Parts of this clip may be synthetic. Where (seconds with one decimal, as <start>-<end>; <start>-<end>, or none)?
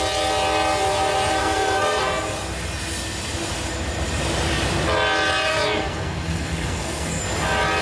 1.4-2.0; 5.5-7.2